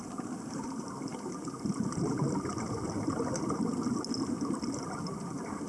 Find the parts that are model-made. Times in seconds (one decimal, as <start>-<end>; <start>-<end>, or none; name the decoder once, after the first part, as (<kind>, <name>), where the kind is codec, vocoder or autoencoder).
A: none